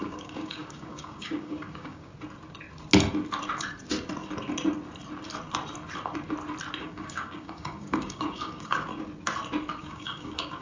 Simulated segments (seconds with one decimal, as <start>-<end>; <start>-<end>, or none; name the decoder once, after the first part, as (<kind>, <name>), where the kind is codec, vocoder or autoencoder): 0.0-2.1 (codec, DAC); 6.8-8.9; 9.8-10.6